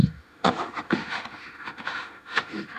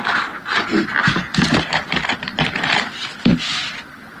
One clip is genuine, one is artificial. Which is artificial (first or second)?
first